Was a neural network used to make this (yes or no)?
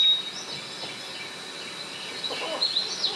no